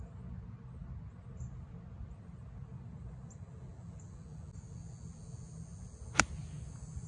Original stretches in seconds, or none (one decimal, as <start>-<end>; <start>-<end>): 0.0-7.1